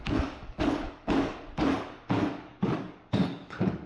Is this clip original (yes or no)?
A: no